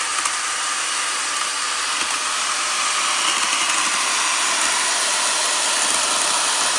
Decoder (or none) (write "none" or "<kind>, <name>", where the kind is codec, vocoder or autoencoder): none